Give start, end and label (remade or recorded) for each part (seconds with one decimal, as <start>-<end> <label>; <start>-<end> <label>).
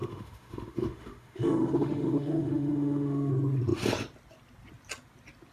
0.0-3.3 remade; 3.3-5.5 recorded